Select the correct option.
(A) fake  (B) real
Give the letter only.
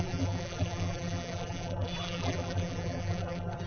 A